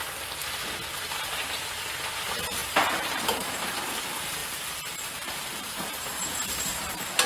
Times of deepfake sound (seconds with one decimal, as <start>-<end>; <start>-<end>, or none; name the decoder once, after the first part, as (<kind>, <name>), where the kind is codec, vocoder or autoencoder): 0.0-0.4 (vocoder, BigVGAN v2); 0.9-7.3